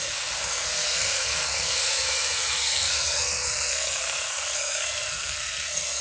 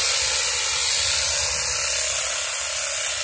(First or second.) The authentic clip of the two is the second